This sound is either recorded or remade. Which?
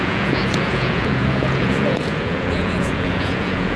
remade